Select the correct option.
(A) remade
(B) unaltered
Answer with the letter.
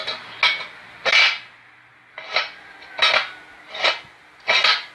B